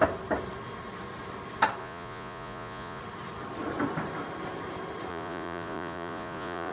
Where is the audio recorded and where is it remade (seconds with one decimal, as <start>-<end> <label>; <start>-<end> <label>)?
0.0-1.8 recorded; 1.8-3.0 remade; 3.0-5.1 recorded; 5.1-6.7 remade